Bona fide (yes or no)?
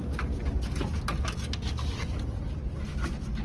yes